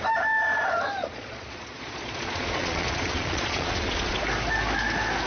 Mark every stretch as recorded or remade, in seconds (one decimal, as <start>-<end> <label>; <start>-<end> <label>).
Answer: 0.0-1.0 recorded; 1.0-4.2 remade; 4.2-5.3 recorded